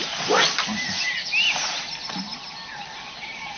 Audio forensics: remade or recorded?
recorded